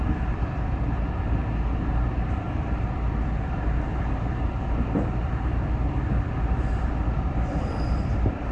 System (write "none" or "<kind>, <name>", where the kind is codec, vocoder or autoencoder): vocoder, BigVGAN v2